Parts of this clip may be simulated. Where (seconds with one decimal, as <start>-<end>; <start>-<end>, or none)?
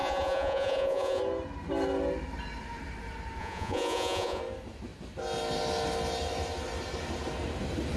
0.0-1.2; 3.4-4.4